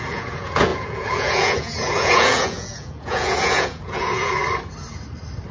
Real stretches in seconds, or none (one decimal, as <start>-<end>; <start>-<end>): 4.4-5.5